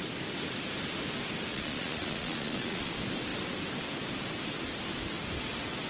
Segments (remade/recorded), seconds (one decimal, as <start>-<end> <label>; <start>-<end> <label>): 0.0-1.5 recorded; 1.5-2.9 remade; 2.9-5.9 recorded